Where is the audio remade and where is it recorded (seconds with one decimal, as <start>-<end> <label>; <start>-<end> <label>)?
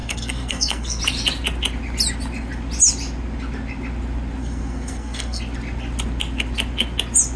0.0-1.0 remade; 1.0-4.4 recorded; 4.4-5.4 remade; 5.4-7.4 recorded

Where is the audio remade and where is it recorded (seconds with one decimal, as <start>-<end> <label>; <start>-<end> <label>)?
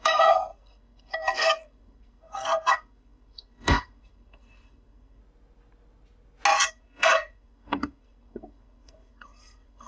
0.0-5.2 remade; 5.2-6.7 recorded; 6.7-9.9 remade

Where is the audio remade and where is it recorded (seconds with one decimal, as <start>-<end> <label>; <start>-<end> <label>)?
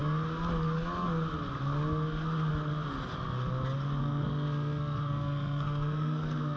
0.0-4.0 recorded; 4.0-6.6 remade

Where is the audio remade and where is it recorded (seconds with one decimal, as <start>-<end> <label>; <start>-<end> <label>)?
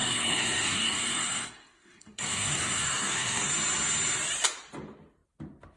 0.0-3.5 remade; 3.5-5.8 recorded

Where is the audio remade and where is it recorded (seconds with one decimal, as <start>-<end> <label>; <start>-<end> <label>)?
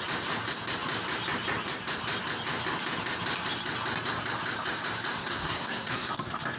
0.0-5.2 recorded; 5.2-6.1 remade; 6.1-6.6 recorded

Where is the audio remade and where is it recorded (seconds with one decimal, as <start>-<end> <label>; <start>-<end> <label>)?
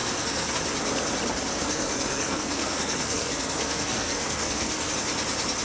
0.0-0.5 remade; 0.5-1.5 recorded; 1.5-4.9 remade; 4.9-5.6 recorded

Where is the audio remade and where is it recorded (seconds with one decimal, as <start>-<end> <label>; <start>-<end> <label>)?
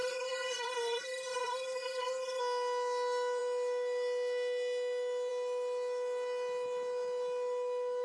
0.0-2.4 remade; 2.4-8.0 recorded